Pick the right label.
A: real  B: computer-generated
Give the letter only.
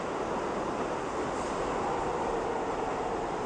A